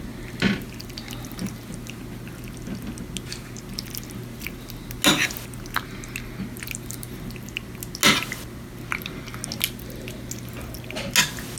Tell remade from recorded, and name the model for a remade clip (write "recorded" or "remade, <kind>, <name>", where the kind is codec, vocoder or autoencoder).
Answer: recorded